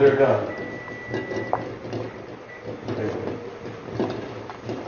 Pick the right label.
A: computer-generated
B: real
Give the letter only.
B